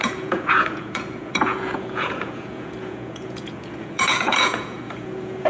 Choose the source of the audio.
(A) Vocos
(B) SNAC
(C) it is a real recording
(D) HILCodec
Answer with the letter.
A